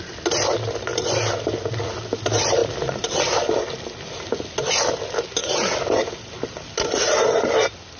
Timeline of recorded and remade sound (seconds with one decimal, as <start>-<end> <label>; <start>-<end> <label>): 0.0-0.9 recorded; 0.9-1.8 remade; 1.8-2.6 recorded; 2.6-3.5 remade; 3.5-8.0 recorded